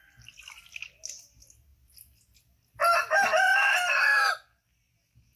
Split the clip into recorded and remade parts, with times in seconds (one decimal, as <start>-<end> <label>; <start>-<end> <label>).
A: 0.0-5.4 recorded